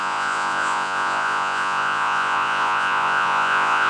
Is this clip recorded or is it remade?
remade